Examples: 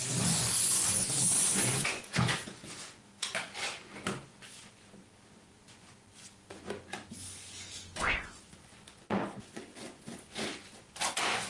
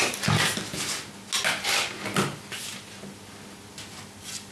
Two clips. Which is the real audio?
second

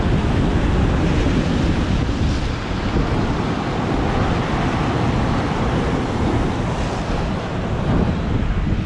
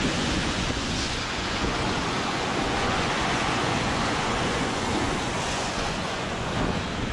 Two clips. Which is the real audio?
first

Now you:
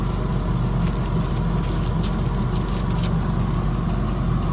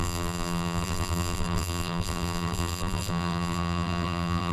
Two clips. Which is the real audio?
first